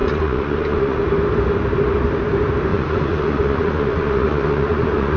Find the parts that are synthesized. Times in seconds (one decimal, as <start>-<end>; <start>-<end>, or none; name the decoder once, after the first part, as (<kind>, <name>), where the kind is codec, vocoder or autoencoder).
0.0-1.0 (vocoder, Vocos); 2.7-5.2